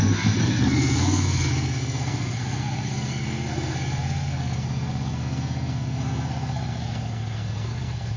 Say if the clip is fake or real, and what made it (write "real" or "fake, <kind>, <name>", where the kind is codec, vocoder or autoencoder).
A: fake, codec, SNAC